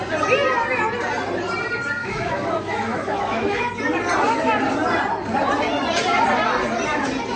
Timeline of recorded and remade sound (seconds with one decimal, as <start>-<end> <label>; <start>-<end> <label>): 0.0-2.0 recorded; 2.0-3.7 remade; 3.7-7.4 recorded